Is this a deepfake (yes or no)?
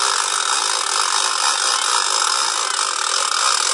no